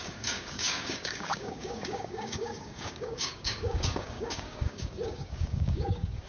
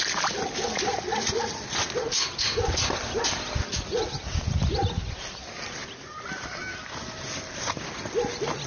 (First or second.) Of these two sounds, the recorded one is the second